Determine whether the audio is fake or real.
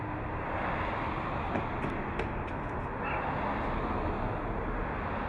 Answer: real